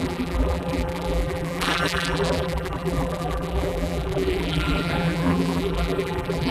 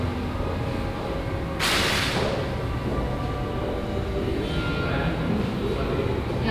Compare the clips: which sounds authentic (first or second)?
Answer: second